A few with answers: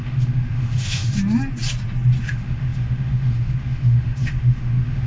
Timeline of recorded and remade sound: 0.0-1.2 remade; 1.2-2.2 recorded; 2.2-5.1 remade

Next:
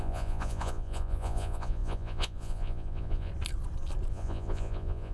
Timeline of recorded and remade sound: 0.0-3.3 remade; 3.3-4.1 recorded; 4.1-5.1 remade

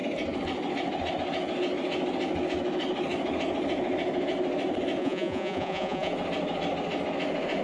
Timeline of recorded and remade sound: 0.0-5.0 recorded; 5.0-6.1 remade; 6.1-7.6 recorded

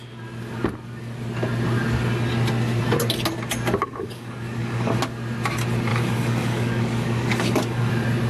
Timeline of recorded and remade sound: 0.0-3.8 recorded; 3.8-4.9 remade; 4.9-5.9 recorded; 5.9-7.9 remade; 7.9-8.3 recorded